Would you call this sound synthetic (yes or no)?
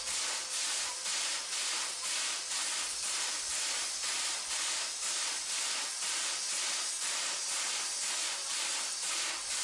no